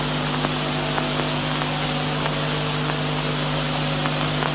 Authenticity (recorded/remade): recorded